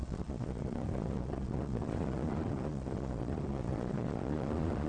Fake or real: fake